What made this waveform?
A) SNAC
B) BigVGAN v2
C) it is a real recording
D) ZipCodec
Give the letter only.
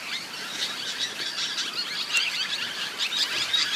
C